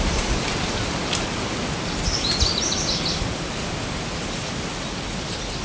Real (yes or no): yes